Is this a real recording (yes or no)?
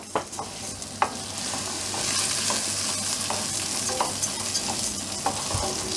yes